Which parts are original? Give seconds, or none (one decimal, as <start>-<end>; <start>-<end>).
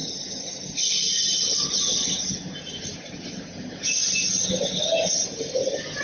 0.0-6.0